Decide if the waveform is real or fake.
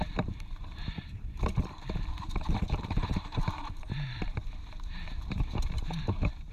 fake